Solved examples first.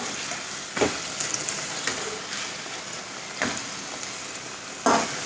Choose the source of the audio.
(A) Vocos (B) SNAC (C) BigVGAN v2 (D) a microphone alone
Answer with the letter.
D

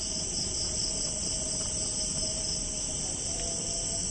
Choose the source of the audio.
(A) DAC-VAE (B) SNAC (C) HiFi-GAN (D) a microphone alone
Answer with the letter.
D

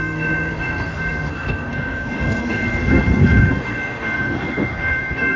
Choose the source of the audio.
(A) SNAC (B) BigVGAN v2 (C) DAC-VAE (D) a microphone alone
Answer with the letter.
A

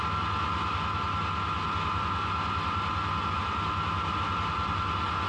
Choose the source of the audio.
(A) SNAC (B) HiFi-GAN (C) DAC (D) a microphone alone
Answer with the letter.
D